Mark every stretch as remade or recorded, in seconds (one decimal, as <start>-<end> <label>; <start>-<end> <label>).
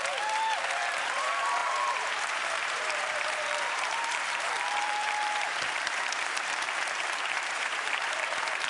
0.0-8.7 remade